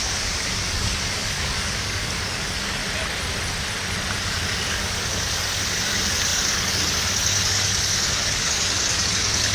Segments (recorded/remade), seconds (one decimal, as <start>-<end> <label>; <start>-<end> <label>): 0.0-2.8 remade; 2.8-4.2 recorded; 4.2-9.5 remade